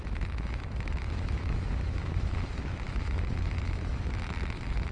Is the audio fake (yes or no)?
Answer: yes